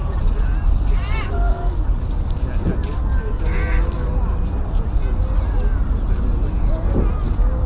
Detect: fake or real real